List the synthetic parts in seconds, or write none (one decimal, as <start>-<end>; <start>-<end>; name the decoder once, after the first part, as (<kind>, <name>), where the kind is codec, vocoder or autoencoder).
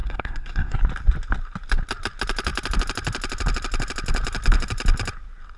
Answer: 0.0-0.8 (codec, SNAC)